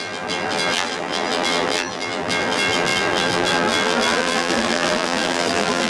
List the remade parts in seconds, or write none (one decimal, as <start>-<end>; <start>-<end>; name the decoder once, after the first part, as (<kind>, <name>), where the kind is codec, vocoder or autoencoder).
0.0-5.9 (vocoder, BigVGAN v2)